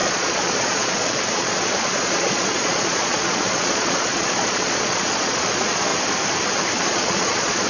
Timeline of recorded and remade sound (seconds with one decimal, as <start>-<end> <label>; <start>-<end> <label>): 0.0-5.9 remade; 5.9-6.8 recorded; 6.8-7.7 remade